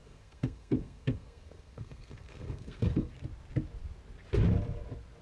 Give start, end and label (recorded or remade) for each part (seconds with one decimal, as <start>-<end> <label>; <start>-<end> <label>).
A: 0.0-3.1 remade; 3.1-5.2 recorded